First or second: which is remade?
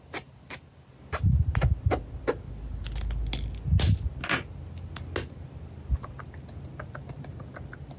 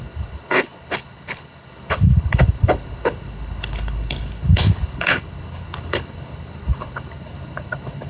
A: second